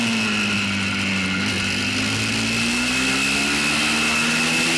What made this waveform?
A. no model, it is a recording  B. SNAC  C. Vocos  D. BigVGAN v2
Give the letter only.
A